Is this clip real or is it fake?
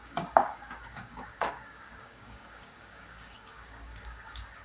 fake